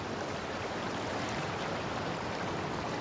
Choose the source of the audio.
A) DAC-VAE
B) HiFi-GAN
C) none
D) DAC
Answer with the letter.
C